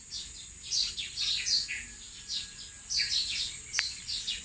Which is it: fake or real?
real